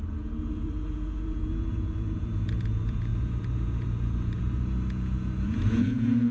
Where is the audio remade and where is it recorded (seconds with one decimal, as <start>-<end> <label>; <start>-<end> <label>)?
0.0-6.3 remade